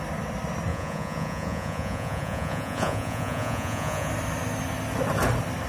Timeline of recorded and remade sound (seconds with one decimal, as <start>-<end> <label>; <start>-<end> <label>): 0.0-0.7 recorded; 0.7-4.1 remade; 4.1-5.7 recorded